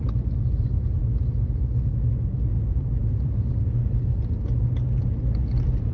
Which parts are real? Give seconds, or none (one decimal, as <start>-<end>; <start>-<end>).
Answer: 0.0-2.5; 3.3-5.9